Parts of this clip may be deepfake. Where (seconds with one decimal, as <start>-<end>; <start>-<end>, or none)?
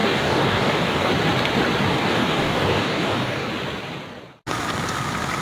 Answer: 0.0-1.1; 1.9-3.5